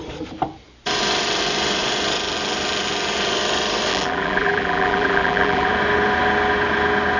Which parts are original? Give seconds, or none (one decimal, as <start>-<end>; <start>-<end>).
0.0-3.9; 5.7-7.2